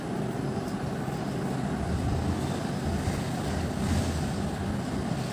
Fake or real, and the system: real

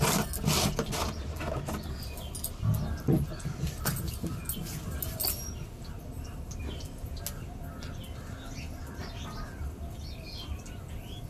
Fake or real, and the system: real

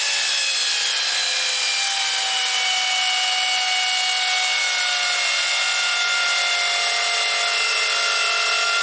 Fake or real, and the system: real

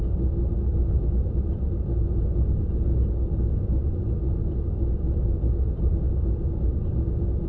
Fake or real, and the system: fake, vocoder, BigVGAN v2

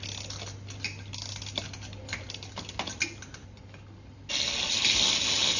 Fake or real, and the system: real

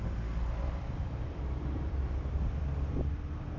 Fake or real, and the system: fake, vocoder, BigVGAN v2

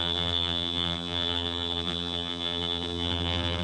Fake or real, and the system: fake, vocoder, BigVGAN v2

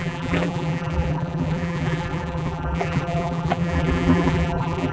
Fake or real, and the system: fake, vocoder, BigVGAN v2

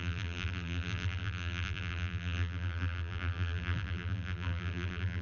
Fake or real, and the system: fake, vocoder, BigVGAN v2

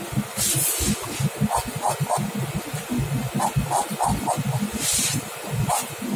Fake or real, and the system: real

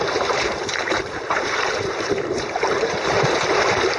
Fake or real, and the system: fake, vocoder, BigVGAN v2